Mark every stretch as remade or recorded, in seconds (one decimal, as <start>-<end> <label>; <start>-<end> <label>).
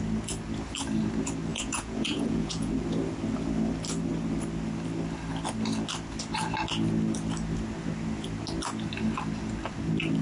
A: 0.0-1.5 recorded; 1.5-2.7 remade; 2.7-10.2 recorded